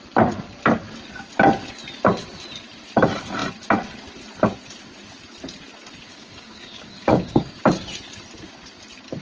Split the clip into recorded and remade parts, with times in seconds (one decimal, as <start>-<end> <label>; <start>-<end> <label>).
0.0-6.1 recorded; 6.1-7.6 remade; 7.6-9.2 recorded